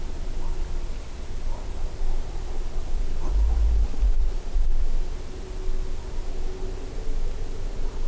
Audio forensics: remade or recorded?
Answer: recorded